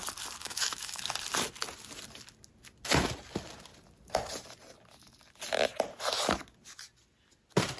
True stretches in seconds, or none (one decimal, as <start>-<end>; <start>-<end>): 0.0-0.4; 1.0-7.8